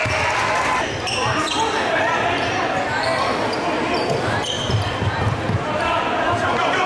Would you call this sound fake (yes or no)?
no